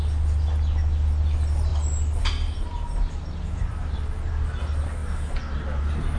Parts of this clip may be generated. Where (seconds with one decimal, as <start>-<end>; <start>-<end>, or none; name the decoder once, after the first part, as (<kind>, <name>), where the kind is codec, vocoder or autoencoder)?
none